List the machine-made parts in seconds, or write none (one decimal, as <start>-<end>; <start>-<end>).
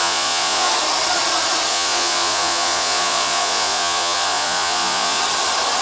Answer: 0.0-0.7; 1.7-5.2